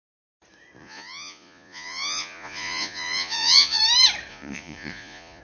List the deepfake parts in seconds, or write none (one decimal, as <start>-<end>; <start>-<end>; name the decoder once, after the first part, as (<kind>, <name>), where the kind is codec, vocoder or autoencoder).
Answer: 0.8-3.8 (vocoder, Vocos); 4.3-5.4

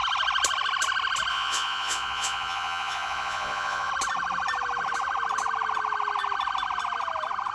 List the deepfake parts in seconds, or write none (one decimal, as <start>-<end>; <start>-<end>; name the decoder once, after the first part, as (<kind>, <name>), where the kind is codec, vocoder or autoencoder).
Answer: 1.3-3.9 (vocoder, Vocos)

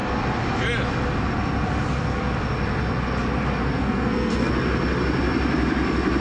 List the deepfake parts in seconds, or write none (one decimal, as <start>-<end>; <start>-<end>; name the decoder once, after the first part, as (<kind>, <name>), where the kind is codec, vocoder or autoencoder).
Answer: 3.6-4.5 (codec, SNAC)

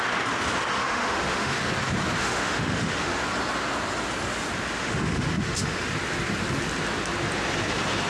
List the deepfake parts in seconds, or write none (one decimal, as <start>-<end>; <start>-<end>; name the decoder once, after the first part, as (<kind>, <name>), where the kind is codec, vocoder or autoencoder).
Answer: 0.8-1.6 (autoencoder, DAC-VAE); 2.2-3.2; 4.8-5.9